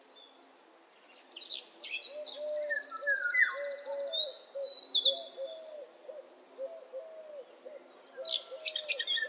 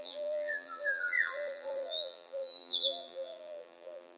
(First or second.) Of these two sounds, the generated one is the second